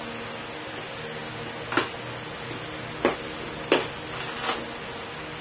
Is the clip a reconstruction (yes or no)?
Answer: no